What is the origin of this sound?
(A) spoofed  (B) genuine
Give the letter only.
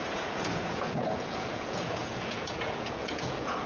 A